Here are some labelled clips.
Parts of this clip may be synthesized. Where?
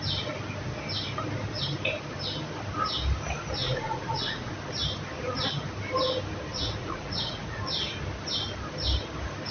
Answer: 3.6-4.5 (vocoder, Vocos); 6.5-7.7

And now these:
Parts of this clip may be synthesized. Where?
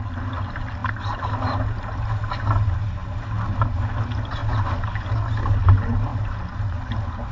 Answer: none